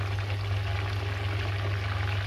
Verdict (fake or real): real